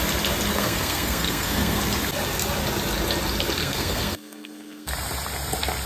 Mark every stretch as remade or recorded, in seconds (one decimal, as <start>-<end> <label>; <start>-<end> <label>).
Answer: 0.0-0.5 recorded; 0.5-1.8 remade; 1.8-3.6 recorded; 3.6-4.9 remade; 4.9-5.9 recorded